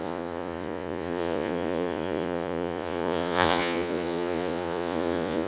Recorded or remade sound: remade